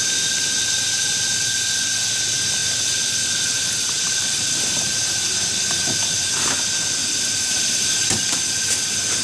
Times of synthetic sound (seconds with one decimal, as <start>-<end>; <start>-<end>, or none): none